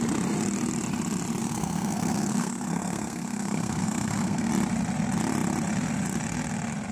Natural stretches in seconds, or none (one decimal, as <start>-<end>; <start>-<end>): 0.0-1.4; 4.5-6.9